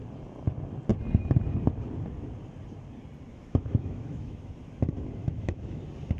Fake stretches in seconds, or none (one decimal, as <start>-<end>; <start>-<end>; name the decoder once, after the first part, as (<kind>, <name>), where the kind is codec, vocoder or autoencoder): 3.3-4.5 (autoencoder, DAC-VAE); 5.2-5.8